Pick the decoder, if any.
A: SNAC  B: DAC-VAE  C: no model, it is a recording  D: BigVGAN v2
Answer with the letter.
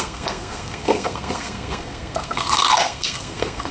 A